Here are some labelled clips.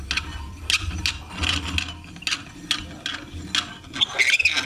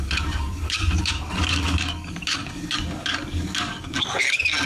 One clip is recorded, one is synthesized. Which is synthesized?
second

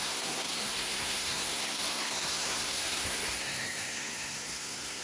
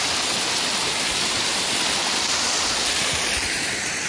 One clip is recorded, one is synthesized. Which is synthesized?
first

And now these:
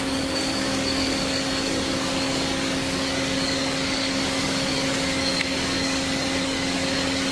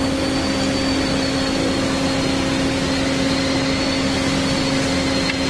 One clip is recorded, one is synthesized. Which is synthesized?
first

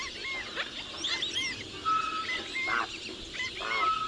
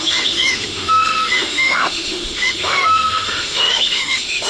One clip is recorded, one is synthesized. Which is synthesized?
second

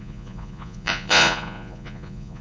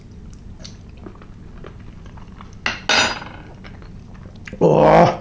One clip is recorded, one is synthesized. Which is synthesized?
first